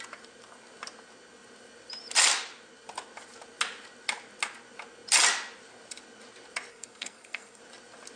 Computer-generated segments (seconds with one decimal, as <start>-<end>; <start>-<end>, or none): 6.7-7.6